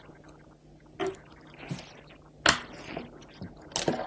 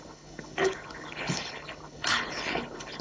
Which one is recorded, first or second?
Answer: first